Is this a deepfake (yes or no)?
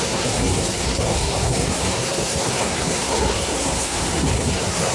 yes